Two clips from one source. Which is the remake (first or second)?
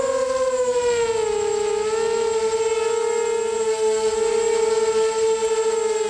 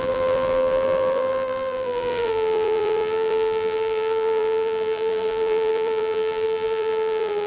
second